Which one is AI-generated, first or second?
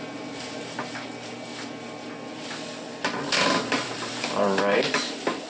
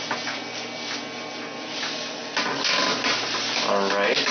first